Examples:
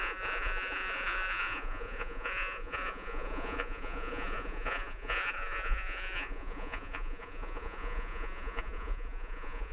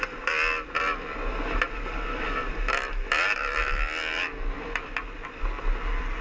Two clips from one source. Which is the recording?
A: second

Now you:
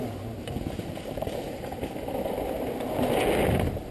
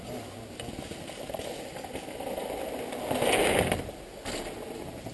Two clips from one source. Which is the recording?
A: second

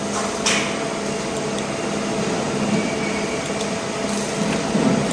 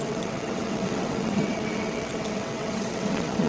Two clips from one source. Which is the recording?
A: first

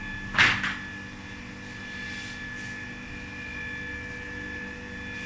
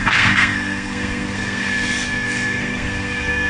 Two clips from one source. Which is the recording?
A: first